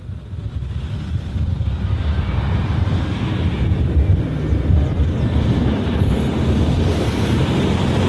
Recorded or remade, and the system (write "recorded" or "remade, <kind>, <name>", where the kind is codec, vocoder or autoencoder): remade, vocoder, BigVGAN v2